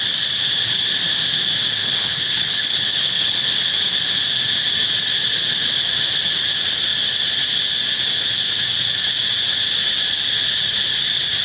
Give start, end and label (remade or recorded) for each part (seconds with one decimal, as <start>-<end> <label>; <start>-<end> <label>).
0.0-1.8 recorded; 1.8-3.5 remade; 3.5-11.4 recorded